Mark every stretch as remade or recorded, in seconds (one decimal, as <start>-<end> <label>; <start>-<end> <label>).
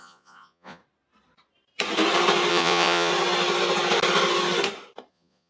0.0-0.8 remade; 0.8-2.5 recorded; 2.5-3.1 remade; 3.1-5.1 recorded; 5.1-5.5 remade